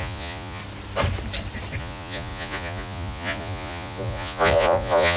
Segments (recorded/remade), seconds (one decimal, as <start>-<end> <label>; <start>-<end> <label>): 0.0-0.6 remade; 0.6-1.8 recorded; 1.8-5.2 remade